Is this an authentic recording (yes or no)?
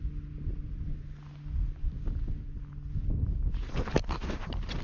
yes